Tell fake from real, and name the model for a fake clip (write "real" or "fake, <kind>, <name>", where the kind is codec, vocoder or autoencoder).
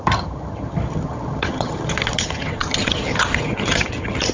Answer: fake, vocoder, HiFi-GAN